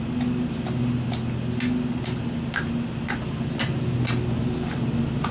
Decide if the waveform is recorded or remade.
recorded